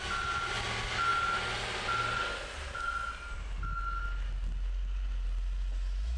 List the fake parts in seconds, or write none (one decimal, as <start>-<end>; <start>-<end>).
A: none